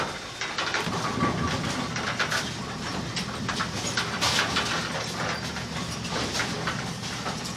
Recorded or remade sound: recorded